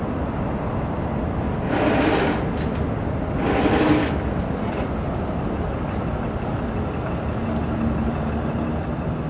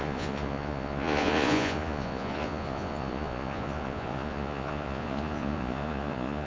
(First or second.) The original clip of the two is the first